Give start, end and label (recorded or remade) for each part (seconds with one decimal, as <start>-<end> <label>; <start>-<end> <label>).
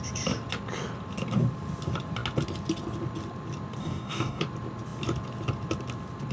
0.0-3.8 recorded; 3.8-4.4 remade; 4.4-6.3 recorded